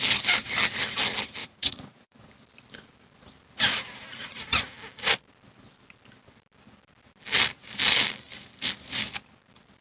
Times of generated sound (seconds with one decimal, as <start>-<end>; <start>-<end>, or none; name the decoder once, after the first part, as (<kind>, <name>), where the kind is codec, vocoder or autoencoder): 1.4-2.3 (vocoder, Vocos); 4.1-4.7